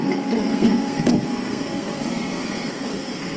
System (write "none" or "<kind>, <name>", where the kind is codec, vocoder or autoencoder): codec, SNAC